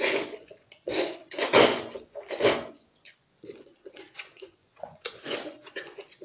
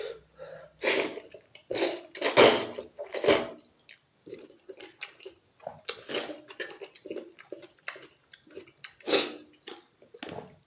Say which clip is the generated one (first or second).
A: first